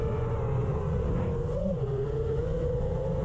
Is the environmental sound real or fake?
fake